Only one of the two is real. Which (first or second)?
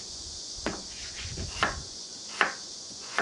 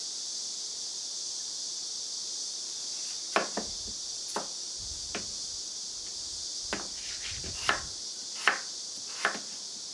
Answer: second